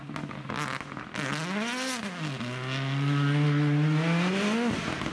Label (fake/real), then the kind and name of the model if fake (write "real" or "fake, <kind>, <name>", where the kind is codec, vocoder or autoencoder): real